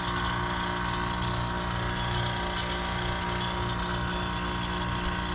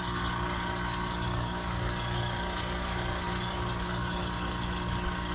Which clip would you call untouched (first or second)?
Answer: first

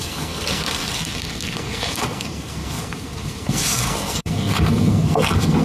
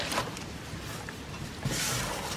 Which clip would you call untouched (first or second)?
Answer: second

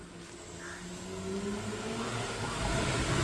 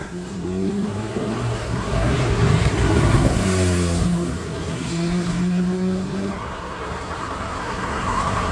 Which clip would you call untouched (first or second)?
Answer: first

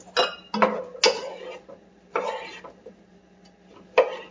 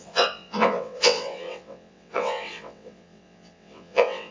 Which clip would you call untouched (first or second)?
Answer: first